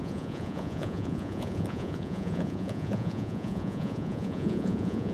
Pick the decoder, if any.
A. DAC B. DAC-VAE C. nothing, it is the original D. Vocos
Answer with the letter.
D